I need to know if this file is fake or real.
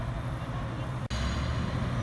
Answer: real